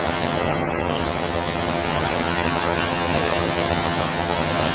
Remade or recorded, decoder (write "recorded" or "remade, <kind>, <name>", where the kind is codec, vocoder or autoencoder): remade, vocoder, HiFi-GAN